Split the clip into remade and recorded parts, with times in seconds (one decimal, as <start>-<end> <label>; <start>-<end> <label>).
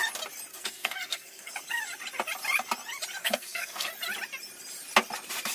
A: 0.0-0.5 recorded; 0.5-1.5 remade; 1.5-3.2 recorded; 3.2-3.9 remade; 3.9-5.5 recorded